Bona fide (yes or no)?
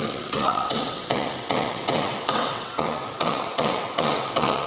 no